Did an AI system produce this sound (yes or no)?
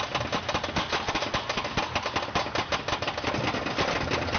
no